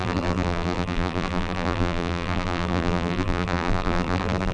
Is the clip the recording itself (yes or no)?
no